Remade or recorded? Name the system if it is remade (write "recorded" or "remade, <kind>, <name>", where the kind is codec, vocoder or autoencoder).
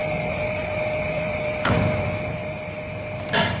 remade, vocoder, BigVGAN v2